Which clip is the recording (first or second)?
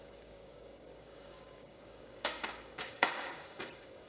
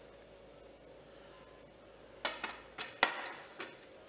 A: second